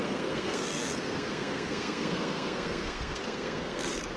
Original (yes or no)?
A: no